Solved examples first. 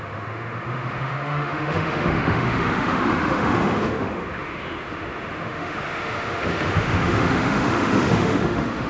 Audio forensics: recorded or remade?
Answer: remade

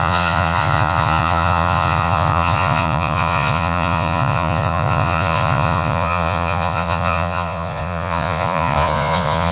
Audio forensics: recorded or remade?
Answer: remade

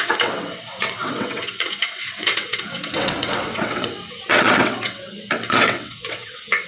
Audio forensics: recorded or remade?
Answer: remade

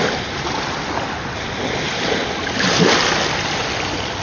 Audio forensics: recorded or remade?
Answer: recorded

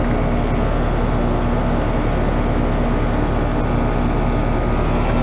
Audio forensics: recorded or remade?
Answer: recorded